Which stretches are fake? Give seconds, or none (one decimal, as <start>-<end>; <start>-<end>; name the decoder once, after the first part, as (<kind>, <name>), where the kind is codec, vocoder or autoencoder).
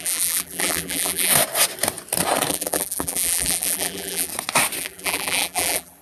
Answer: 0.0-1.3 (vocoder, BigVGAN v2); 2.5-4.3; 4.8-6.0